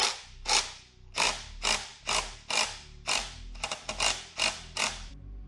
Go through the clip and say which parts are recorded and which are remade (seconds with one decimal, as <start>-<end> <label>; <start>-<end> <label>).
0.0-5.5 recorded

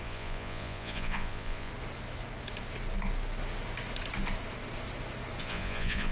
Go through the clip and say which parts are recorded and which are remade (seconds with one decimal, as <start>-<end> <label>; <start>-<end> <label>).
0.0-1.7 remade; 1.7-5.4 recorded; 5.4-6.1 remade

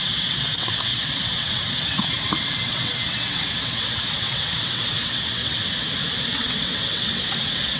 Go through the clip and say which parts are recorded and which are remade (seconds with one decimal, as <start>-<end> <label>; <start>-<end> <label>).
0.0-5.6 remade; 5.6-6.3 recorded; 6.3-7.8 remade

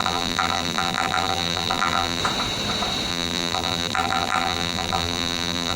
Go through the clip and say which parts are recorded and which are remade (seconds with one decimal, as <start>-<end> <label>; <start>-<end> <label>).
0.0-2.2 remade; 2.2-3.1 recorded; 3.1-5.8 remade

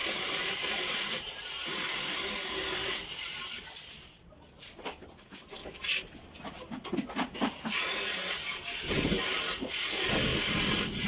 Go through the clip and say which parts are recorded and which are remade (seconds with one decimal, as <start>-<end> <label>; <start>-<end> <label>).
0.0-1.4 remade; 1.4-2.8 recorded; 2.8-4.0 remade; 4.0-11.1 recorded

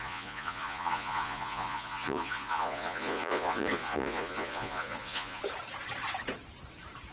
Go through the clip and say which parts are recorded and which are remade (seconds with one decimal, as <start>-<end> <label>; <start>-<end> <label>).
0.0-5.4 remade; 5.4-7.1 recorded

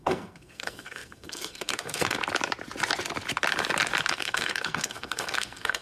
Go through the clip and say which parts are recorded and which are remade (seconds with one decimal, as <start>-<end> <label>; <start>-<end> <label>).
0.0-2.2 remade; 2.2-4.1 recorded; 4.1-5.8 remade